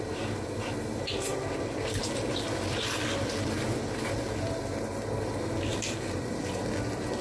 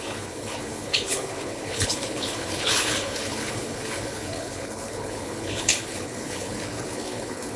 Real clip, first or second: first